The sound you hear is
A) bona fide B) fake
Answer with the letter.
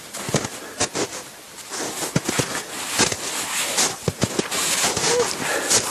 A